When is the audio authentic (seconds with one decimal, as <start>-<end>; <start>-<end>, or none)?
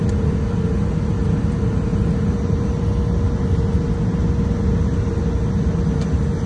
0.0-6.5